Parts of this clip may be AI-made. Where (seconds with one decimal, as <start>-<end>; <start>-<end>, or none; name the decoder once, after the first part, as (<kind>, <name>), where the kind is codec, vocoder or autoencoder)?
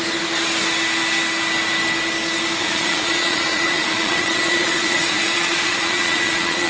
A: 2.6-6.7 (vocoder, Vocos)